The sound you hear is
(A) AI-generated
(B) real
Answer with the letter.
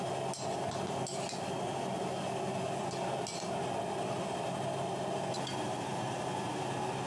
B